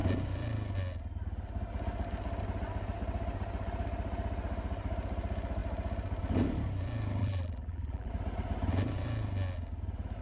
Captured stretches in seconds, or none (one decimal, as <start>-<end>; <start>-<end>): 0.0-7.2; 8.1-10.2